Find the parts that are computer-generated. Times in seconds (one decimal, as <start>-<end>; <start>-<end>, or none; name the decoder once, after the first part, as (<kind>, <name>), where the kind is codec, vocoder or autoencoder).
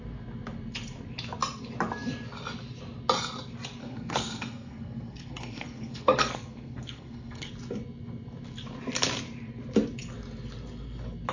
3.8-7.5 (codec, SNAC)